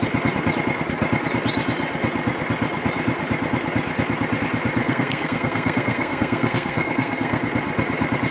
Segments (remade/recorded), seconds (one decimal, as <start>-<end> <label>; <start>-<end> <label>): 0.0-4.8 recorded; 4.8-7.4 remade; 7.4-8.3 recorded